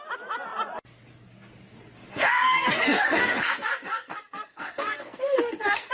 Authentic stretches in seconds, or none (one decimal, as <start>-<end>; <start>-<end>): 0.0-2.1